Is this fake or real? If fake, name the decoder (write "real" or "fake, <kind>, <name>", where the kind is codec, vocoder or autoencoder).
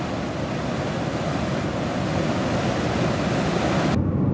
real